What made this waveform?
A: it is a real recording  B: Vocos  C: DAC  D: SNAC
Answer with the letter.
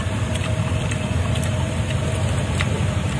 A